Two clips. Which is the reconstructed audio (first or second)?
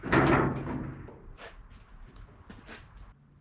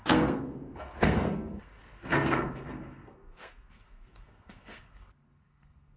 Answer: second